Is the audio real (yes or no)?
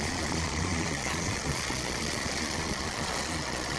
no